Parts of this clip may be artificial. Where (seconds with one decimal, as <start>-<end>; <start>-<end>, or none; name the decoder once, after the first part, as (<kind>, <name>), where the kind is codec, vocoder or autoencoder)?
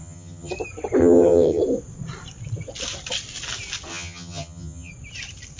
0.0-0.5 (vocoder, HiFi-GAN); 1.0-1.6; 3.9-4.9